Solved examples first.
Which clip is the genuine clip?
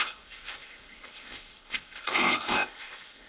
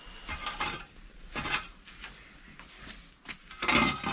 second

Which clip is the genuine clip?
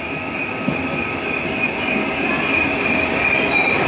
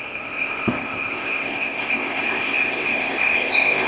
first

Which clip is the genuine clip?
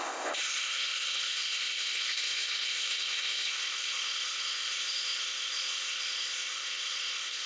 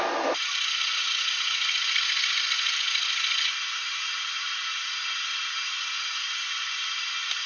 second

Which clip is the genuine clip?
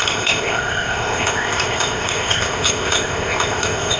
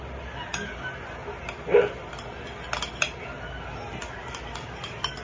second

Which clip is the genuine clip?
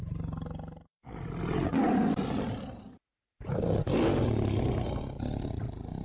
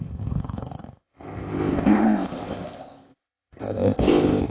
first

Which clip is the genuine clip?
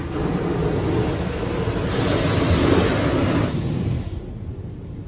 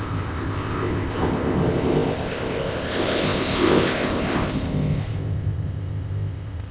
first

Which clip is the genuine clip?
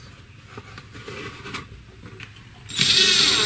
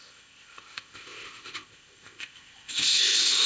first